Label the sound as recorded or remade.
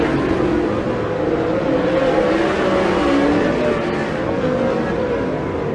recorded